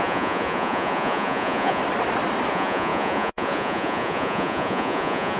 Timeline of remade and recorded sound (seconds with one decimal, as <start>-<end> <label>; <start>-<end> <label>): 0.0-1.8 remade; 1.8-2.5 recorded; 2.5-5.4 remade